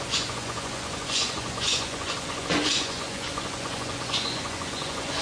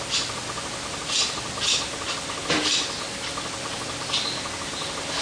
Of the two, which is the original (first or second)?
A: second